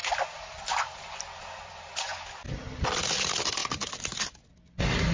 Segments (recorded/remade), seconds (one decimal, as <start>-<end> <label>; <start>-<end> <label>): 0.0-5.1 recorded